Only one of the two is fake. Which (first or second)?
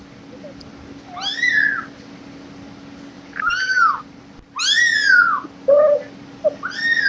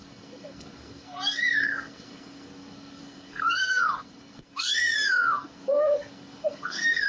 second